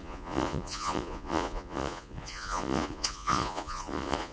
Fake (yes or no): yes